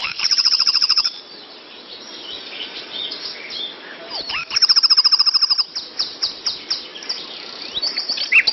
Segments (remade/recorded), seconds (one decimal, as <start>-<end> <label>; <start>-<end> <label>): 0.0-1.2 remade; 1.2-8.5 recorded